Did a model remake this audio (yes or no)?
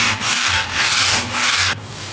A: yes